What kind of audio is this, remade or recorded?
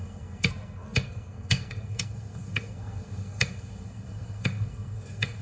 remade